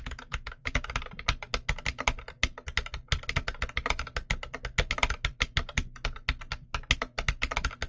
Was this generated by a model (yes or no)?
no